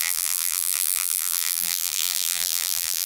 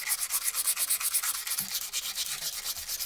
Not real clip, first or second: first